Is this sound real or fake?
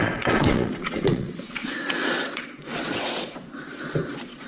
fake